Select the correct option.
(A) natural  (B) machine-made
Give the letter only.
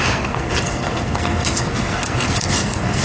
B